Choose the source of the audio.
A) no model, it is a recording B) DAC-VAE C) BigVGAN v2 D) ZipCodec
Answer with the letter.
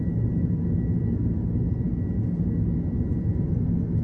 A